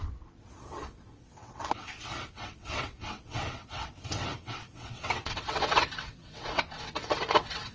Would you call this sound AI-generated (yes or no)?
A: yes